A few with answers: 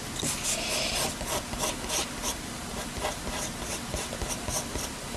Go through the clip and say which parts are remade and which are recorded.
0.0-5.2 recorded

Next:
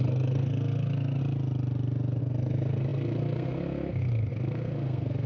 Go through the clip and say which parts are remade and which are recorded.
0.0-1.2 remade; 1.2-2.2 recorded; 2.2-5.3 remade

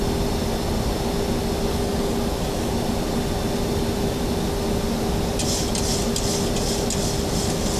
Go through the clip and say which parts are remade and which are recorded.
0.0-1.7 recorded; 1.7-2.7 remade; 2.7-7.8 recorded

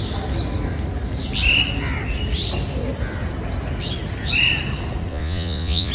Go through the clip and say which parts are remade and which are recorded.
0.0-5.1 recorded; 5.1-5.9 remade

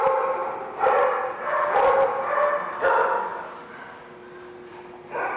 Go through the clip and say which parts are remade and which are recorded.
0.0-5.4 recorded

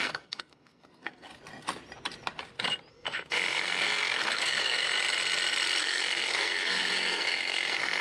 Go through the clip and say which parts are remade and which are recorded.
0.0-1.3 remade; 1.3-2.9 recorded; 2.9-4.9 remade; 4.9-5.8 recorded; 5.8-8.0 remade